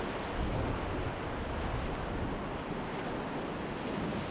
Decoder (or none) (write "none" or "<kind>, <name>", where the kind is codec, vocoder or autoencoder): none